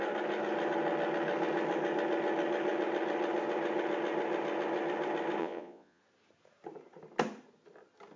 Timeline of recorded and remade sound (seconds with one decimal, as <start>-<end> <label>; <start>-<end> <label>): 0.0-5.4 recorded; 5.4-6.0 remade; 6.0-8.2 recorded